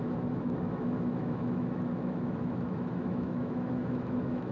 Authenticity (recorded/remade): remade